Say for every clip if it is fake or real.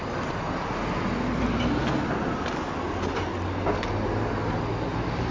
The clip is real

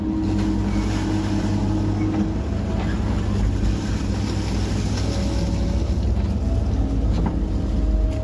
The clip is real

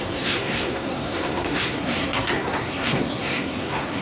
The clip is fake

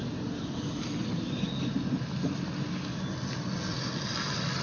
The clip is real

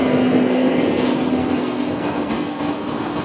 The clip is fake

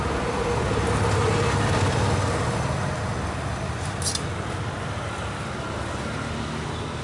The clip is real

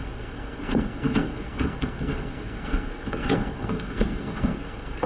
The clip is fake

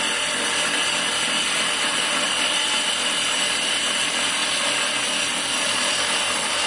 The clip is real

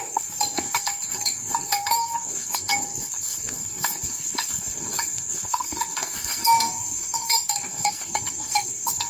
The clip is fake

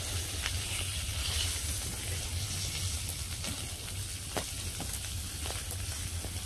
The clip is real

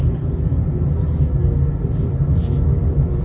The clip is real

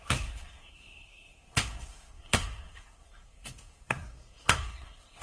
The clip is fake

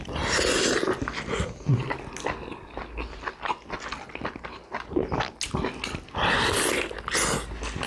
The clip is real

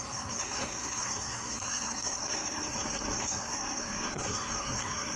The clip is fake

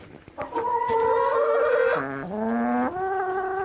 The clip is real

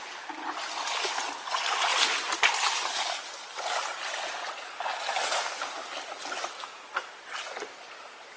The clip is real